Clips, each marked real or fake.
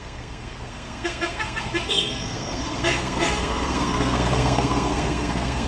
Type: fake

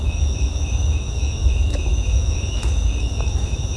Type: fake